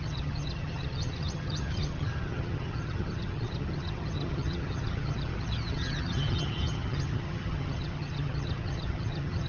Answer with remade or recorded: remade